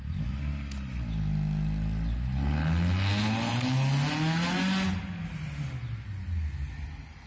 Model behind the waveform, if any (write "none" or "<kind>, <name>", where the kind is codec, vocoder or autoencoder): none